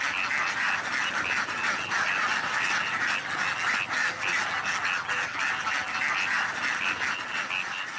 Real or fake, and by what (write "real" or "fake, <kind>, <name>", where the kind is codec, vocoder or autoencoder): real